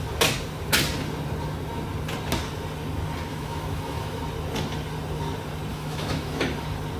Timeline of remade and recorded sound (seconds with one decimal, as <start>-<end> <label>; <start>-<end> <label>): 0.0-3.3 recorded; 3.3-4.2 remade; 4.2-5.7 recorded; 5.7-6.4 remade; 6.4-7.0 recorded